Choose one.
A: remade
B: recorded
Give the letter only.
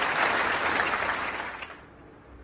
B